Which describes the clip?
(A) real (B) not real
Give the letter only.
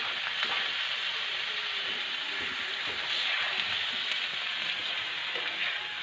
A